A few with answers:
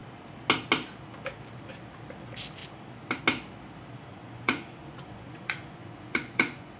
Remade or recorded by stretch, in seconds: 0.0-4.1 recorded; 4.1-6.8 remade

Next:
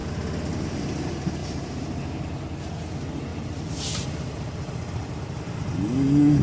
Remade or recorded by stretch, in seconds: 0.0-1.4 recorded; 1.4-2.0 remade; 2.0-3.3 recorded; 3.3-5.4 remade; 5.4-6.4 recorded

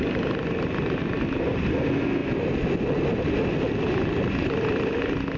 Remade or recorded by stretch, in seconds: 0.0-5.4 recorded

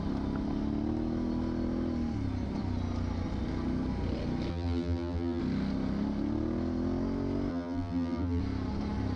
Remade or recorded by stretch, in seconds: 0.0-4.5 recorded; 4.5-5.4 remade; 5.4-7.5 recorded; 7.5-8.4 remade; 8.4-9.2 recorded

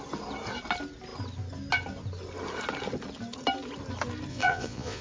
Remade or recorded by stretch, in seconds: 0.0-4.3 recorded; 4.3-5.0 remade

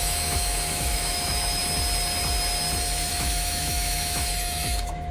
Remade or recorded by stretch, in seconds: 0.0-1.6 remade; 1.6-3.1 recorded; 3.1-5.1 remade

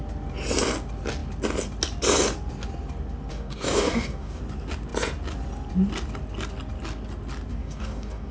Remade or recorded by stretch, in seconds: 0.0-3.3 recorded; 3.3-4.4 remade; 4.4-7.5 recorded; 7.5-8.3 remade

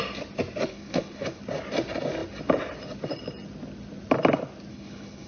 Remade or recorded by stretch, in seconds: 0.0-0.7 recorded; 0.7-1.4 remade; 1.4-4.7 recorded; 4.7-5.3 remade